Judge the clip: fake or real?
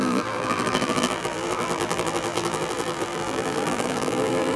fake